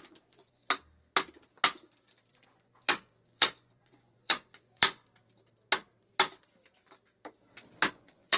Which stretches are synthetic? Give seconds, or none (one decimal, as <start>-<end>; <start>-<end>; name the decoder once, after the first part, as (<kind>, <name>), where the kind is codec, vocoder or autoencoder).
0.0-0.6 (vocoder, Vocos); 2.3-5.0; 7.9-8.4